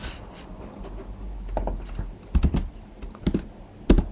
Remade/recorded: recorded